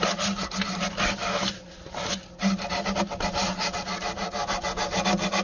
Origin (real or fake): real